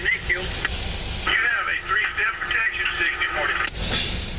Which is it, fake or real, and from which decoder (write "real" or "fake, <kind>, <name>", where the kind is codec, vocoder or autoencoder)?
real